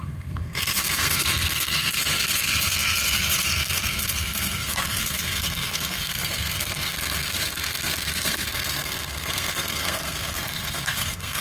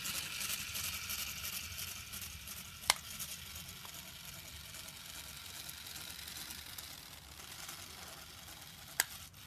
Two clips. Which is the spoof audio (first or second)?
first